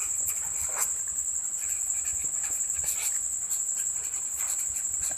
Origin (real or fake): real